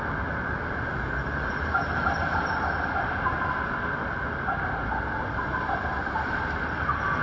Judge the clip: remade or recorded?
recorded